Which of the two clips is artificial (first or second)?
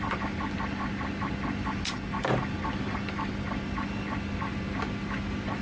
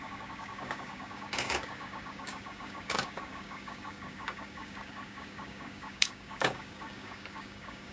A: second